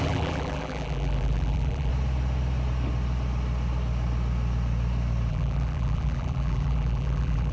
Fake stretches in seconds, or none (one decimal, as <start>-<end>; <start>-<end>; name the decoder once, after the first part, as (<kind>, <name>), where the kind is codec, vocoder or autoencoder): 0.0-1.9 (vocoder, BigVGAN v2); 5.3-7.5